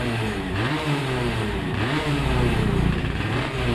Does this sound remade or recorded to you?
remade